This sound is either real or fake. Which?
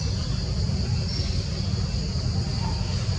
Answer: real